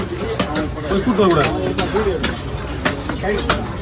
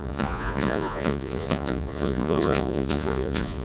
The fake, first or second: second